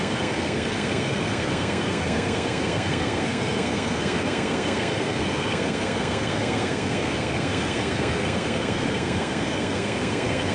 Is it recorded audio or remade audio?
remade